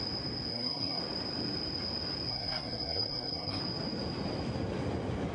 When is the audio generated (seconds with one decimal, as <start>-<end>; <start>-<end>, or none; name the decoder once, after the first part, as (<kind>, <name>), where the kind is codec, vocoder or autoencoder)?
0.5-1.0 (codec, SNAC); 2.3-3.6